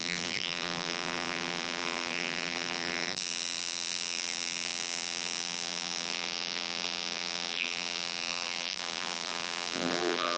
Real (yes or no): no